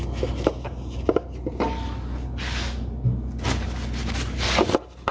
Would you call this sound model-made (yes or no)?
no